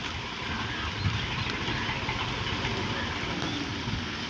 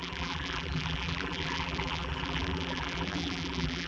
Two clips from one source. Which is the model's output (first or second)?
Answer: second